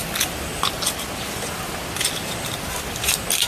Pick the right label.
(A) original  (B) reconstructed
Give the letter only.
A